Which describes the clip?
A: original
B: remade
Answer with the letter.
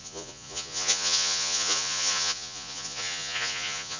B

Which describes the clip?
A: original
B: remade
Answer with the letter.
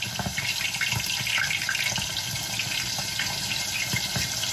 A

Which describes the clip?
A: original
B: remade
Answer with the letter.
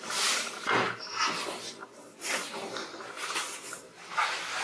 B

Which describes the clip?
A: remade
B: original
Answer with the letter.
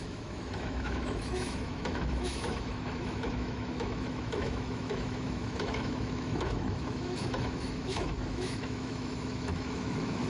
A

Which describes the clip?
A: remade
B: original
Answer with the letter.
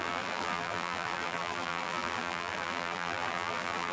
A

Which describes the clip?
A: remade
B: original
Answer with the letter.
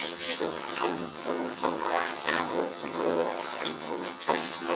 A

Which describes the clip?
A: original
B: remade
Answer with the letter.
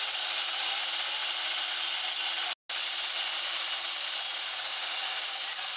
A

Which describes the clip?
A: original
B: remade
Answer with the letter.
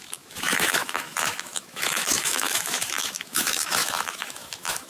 B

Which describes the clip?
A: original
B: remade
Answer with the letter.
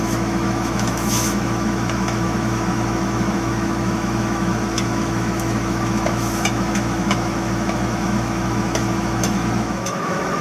B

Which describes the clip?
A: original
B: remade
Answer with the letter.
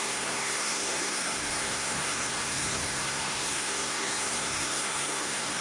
B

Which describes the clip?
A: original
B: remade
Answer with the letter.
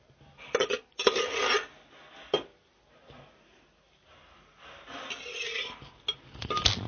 A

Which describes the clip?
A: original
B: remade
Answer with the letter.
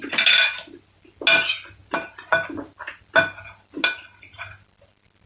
A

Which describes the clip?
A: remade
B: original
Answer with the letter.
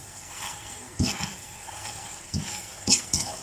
A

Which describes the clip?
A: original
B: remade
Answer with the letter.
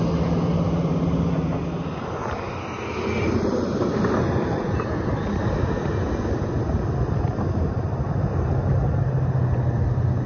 A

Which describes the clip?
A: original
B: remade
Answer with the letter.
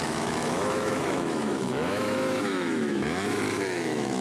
B